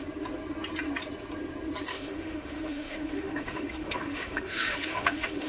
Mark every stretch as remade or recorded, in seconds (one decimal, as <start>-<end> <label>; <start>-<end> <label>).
0.0-1.9 recorded; 1.9-5.5 remade